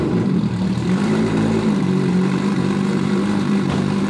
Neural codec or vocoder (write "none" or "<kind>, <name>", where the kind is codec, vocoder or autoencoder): vocoder, BigVGAN v2